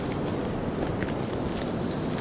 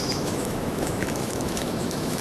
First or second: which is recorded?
first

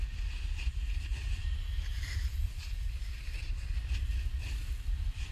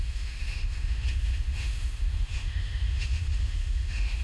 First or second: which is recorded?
first